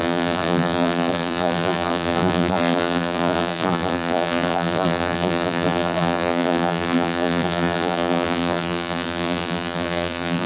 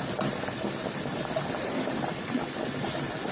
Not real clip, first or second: first